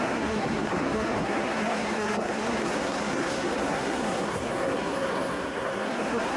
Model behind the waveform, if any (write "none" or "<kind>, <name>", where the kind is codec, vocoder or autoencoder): codec, SNAC